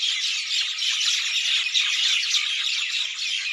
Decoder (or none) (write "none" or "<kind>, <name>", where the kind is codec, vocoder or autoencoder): none